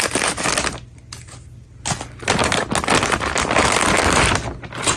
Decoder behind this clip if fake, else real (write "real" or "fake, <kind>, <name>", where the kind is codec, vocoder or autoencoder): real